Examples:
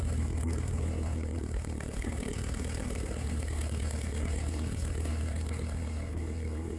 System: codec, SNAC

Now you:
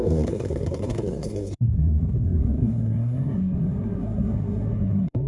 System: codec, SNAC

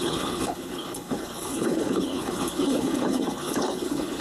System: codec, HILCodec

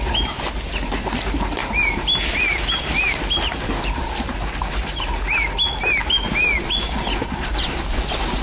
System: none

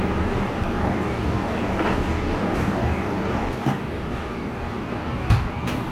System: codec, DAC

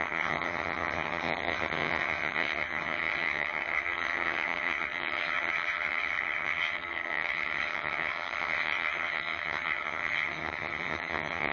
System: vocoder, HiFi-GAN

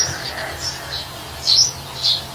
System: vocoder, BigVGAN v2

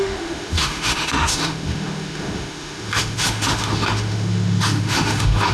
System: autoencoder, DAC-VAE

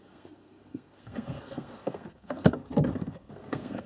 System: codec, SNAC